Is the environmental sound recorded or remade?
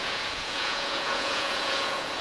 remade